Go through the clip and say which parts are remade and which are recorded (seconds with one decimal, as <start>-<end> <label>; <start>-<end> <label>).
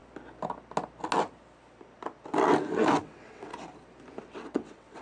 0.0-3.0 recorded; 3.0-3.5 remade; 3.5-4.2 recorded; 4.2-5.0 remade